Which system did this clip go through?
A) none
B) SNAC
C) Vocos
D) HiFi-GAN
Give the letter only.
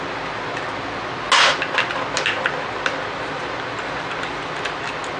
A